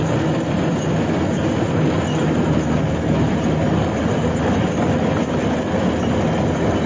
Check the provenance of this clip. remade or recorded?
recorded